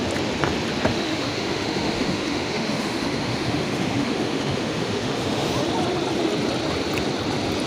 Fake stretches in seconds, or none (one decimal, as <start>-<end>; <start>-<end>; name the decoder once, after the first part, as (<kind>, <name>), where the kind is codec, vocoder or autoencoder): 0.9-5.5 (autoencoder, DAC-VAE)